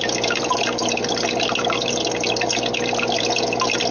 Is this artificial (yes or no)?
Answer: no